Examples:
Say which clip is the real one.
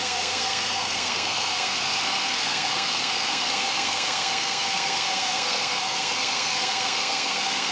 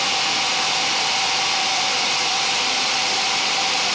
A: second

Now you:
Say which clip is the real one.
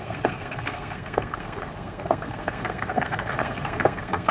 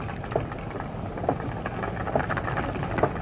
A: second